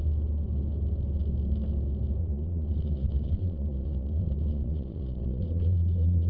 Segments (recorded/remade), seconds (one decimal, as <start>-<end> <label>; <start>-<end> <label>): 0.0-2.2 recorded; 2.2-6.3 remade